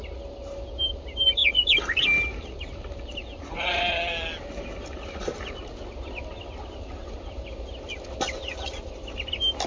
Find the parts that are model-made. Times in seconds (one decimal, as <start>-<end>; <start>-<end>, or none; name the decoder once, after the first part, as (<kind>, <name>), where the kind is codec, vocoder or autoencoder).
3.2-3.7 (vocoder, Vocos)